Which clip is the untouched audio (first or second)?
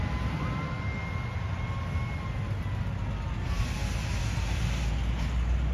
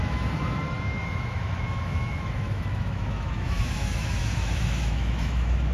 first